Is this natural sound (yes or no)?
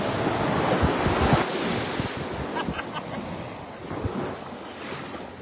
yes